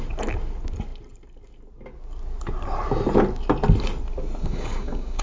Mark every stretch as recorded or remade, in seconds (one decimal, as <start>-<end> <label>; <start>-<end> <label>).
0.0-4.4 recorded; 4.4-5.2 remade